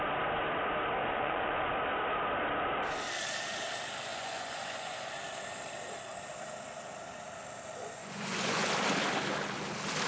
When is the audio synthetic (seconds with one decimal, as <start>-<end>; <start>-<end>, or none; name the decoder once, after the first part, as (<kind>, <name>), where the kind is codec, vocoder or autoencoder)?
1.0-1.7 (vocoder, Vocos); 4.1-5.1; 7.8-8.7

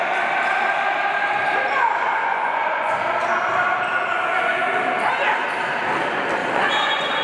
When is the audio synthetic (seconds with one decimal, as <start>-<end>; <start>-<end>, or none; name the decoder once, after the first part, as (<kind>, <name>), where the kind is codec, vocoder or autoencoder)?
2.2-3.0 (vocoder, Vocos); 6.4-7.2

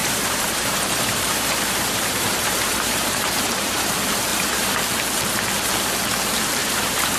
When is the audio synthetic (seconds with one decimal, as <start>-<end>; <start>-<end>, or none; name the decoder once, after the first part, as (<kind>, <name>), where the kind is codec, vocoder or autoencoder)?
0.0-3.9 (vocoder, BigVGAN v2); 4.3-4.8; 6.6-7.2

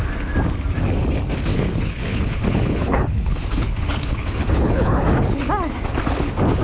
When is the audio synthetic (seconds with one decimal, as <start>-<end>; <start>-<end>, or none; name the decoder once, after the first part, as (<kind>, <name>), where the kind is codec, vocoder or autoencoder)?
1.5-5.5 (codec, HILCodec)

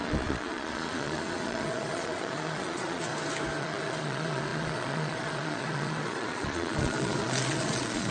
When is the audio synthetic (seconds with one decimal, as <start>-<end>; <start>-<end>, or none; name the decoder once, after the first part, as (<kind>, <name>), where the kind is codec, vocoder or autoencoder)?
0.0-3.1 (vocoder, Vocos); 3.6-8.1

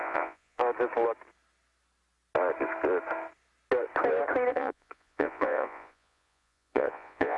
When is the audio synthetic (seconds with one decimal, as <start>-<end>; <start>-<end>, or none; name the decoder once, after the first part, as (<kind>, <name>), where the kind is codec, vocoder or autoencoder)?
0.0-0.6 (vocoder, Vocos); 4.5-7.4